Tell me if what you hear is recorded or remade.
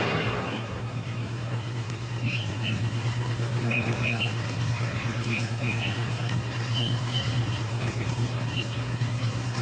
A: remade